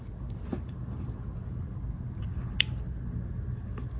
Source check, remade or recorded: recorded